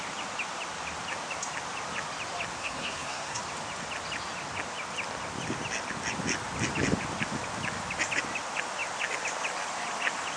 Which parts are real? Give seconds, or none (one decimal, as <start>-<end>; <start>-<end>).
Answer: 0.0-2.6; 3.4-10.4